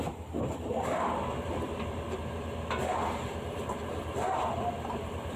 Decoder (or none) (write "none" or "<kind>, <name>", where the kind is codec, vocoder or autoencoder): vocoder, BigVGAN v2